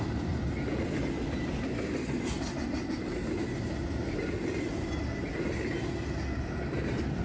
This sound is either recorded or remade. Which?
recorded